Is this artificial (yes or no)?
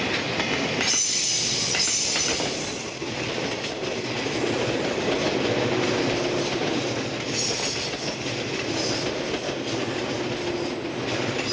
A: no